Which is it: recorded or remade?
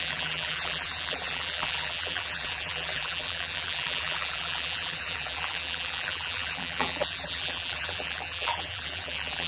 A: remade